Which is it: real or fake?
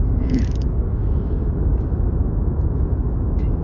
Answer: fake